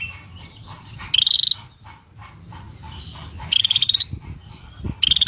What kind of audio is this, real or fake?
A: real